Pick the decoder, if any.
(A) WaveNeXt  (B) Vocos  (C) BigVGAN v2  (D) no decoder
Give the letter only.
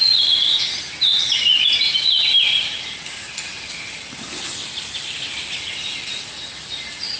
D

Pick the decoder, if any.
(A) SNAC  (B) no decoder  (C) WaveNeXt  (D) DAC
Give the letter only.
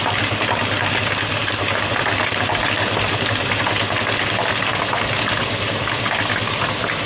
B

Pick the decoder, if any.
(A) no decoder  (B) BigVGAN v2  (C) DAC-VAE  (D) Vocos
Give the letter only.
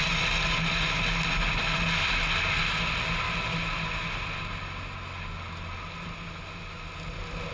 A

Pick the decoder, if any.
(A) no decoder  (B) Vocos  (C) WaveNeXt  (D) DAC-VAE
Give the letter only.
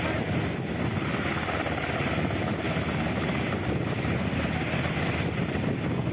A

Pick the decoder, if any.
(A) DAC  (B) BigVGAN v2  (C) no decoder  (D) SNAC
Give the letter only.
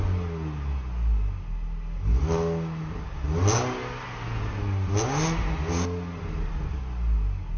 C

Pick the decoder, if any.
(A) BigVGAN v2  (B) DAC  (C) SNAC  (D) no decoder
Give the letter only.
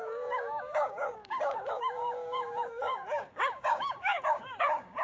B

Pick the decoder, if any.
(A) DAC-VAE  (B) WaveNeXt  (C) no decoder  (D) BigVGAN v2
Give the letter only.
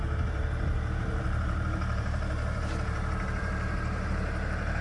D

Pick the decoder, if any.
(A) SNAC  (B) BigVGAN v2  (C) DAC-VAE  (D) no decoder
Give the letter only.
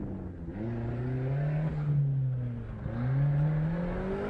D